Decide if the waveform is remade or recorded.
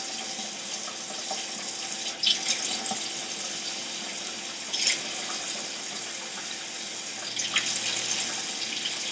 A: recorded